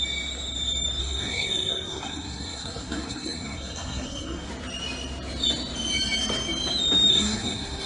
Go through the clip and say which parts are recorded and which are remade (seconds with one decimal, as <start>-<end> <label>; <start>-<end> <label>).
0.0-1.0 recorded; 1.0-4.5 remade; 4.5-7.1 recorded; 7.1-7.9 remade

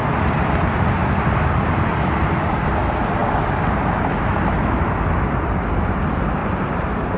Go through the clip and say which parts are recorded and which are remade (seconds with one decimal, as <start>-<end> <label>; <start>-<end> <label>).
0.0-6.4 recorded; 6.4-7.2 remade

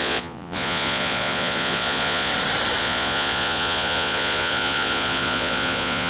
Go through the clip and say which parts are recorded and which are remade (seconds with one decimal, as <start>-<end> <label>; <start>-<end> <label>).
0.0-2.3 remade; 2.3-2.8 recorded; 2.8-6.1 remade

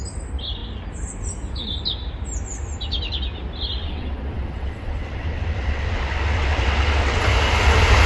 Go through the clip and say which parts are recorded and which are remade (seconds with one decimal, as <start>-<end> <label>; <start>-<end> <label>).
0.0-3.8 recorded; 3.8-7.2 remade; 7.2-8.1 recorded

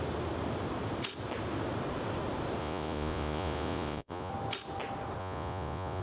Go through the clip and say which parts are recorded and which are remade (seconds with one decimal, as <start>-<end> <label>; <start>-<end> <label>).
0.0-2.6 recorded; 2.6-4.3 remade; 4.3-5.2 recorded; 5.2-6.0 remade